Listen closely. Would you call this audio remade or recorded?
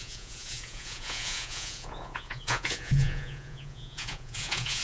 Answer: remade